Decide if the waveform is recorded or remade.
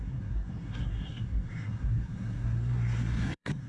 remade